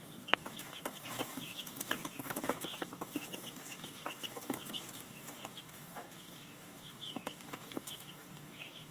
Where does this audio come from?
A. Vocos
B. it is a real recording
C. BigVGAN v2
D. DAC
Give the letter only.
D